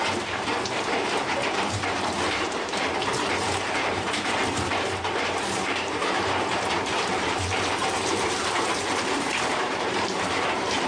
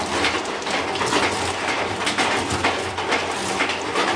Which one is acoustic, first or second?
second